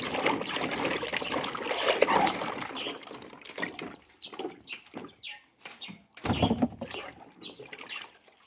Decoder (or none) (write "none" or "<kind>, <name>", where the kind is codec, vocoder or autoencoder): none